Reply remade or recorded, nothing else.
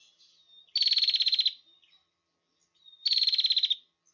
recorded